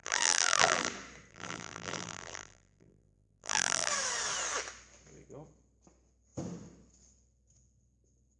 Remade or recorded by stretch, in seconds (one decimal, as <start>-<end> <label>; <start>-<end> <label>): 0.0-0.9 remade; 0.9-1.3 recorded; 1.3-3.9 remade; 3.9-8.4 recorded